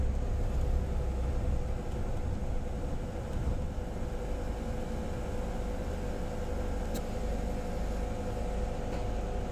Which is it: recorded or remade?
recorded